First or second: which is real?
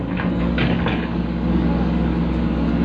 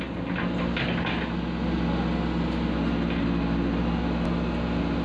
second